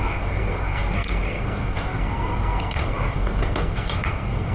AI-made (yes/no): yes